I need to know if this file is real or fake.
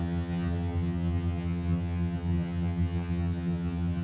fake